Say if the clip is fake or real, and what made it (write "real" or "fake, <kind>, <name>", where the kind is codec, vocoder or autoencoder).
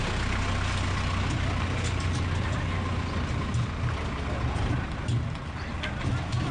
real